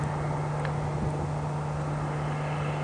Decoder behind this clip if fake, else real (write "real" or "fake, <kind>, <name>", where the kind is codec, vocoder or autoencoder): real